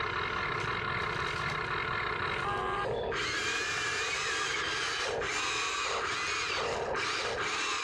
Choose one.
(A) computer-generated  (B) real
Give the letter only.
B